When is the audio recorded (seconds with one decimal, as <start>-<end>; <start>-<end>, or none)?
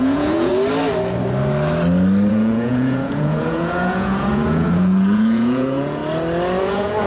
0.5-2.3; 6.0-6.6